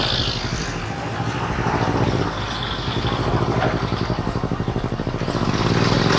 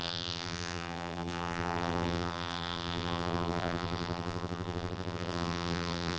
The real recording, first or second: first